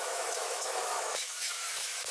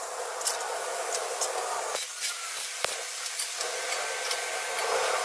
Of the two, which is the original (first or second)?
second